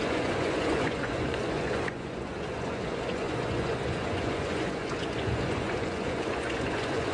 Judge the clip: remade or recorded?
remade